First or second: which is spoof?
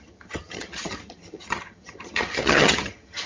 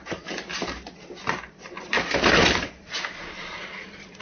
first